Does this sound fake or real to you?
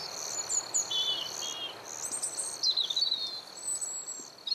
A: real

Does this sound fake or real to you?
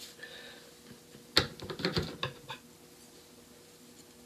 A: real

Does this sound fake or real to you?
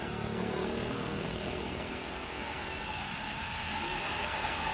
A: fake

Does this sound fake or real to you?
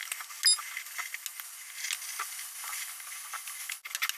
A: real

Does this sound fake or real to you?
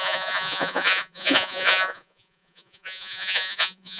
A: fake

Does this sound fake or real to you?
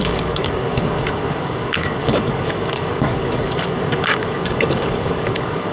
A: fake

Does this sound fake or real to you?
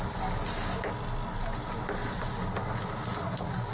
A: real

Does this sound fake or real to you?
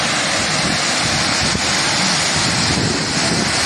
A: real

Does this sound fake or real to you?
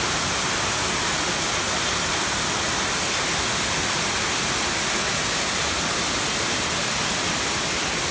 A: real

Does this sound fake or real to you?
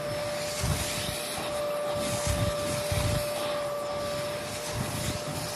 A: real